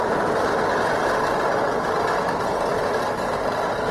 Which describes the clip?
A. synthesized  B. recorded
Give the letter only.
B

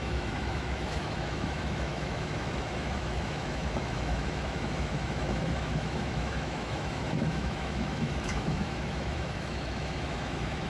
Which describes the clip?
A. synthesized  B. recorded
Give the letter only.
A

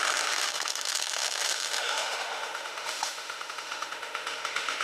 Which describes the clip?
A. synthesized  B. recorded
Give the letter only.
A